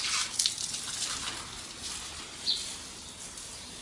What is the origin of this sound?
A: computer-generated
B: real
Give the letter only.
B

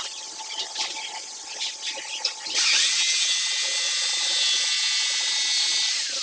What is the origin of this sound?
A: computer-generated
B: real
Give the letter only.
B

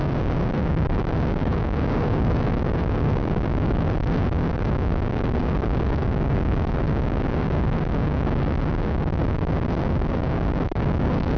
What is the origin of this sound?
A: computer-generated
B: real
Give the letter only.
A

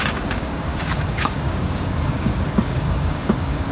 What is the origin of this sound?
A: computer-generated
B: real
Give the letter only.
A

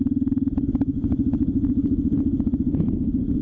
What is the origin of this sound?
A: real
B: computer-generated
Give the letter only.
A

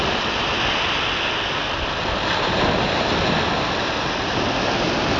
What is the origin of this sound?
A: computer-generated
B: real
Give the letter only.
B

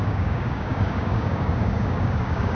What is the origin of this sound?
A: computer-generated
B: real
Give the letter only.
A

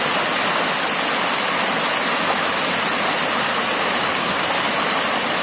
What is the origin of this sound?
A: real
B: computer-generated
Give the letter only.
A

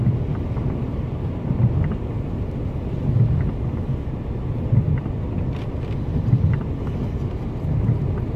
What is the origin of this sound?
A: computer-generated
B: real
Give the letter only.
B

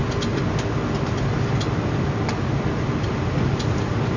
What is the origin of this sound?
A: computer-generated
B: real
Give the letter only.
B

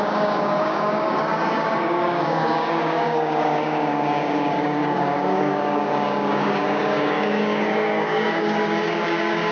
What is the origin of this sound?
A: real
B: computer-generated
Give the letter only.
B